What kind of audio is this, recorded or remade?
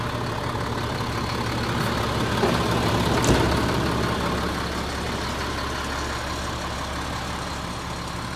recorded